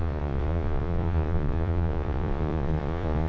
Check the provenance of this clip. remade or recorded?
remade